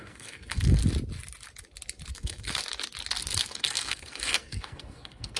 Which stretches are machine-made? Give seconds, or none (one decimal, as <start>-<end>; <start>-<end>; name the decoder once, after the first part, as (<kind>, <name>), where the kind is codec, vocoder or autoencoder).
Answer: 0.0-0.8 (codec, SNAC); 2.1-2.6; 3.2-5.4